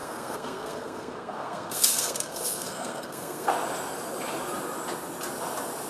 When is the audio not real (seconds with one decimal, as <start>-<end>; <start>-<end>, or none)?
0.0-3.5